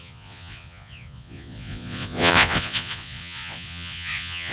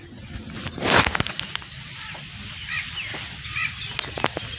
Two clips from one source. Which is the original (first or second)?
second